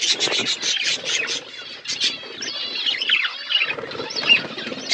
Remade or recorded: recorded